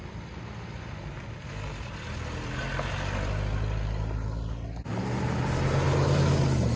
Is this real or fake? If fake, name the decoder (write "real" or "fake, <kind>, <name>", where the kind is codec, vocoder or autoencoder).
real